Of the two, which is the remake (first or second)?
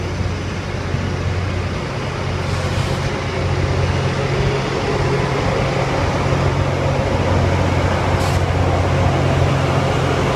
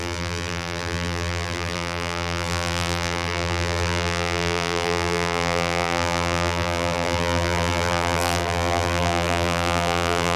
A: second